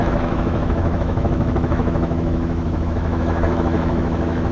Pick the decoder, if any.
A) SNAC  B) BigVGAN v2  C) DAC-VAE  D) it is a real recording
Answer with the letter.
C